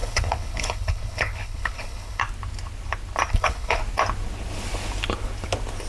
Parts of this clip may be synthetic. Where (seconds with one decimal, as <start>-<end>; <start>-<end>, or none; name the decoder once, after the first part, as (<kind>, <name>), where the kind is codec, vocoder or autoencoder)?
0.0-2.2 (codec, HILCodec); 3.3-3.8